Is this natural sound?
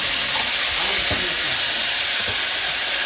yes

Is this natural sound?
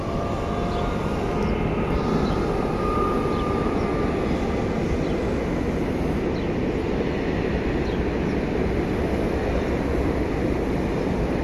yes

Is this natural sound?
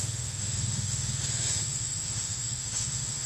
no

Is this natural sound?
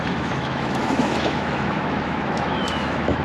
no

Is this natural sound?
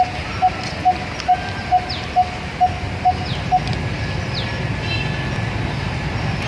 yes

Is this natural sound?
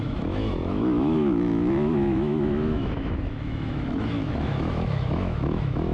no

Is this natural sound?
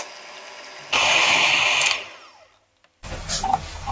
yes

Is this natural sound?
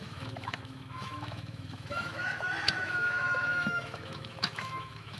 no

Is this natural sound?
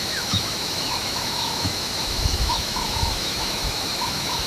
no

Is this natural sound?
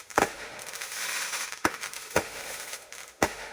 no